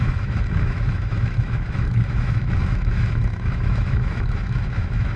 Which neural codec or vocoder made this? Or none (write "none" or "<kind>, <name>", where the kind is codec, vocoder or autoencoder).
autoencoder, DAC-VAE